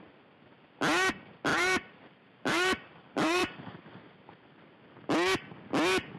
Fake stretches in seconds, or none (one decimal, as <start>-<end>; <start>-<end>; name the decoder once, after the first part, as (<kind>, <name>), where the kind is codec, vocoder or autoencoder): 1.5-3.8 (vocoder, BigVGAN v2)